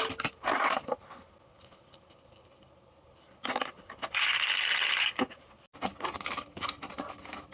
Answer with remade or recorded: recorded